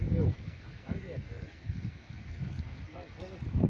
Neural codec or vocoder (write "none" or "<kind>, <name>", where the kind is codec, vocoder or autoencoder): codec, SNAC